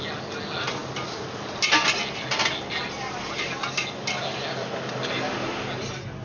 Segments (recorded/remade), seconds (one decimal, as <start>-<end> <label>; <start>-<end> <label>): 0.0-6.2 recorded